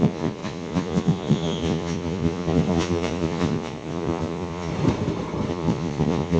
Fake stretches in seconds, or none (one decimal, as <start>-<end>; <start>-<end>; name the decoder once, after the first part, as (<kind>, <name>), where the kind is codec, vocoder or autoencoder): 0.0-4.7 (vocoder, Vocos); 5.5-6.4